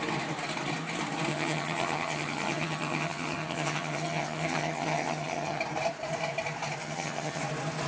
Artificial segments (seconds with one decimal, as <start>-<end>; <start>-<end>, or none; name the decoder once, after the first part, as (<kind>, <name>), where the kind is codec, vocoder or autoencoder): 1.3-5.6 (vocoder, HiFi-GAN); 6.8-7.4